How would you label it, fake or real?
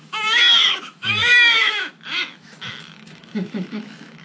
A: fake